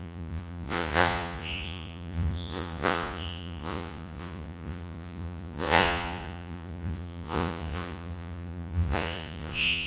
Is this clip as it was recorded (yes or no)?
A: no